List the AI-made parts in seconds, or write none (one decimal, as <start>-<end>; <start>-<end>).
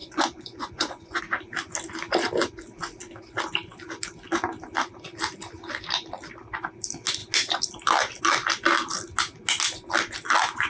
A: 0.0-1.2